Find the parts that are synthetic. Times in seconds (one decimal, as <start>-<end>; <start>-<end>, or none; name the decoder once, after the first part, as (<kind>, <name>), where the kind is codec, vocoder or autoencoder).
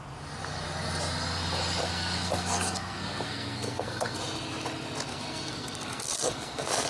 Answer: 1.8-4.2 (codec, SNAC); 5.1-6.9